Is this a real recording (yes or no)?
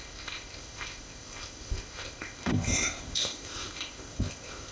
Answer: no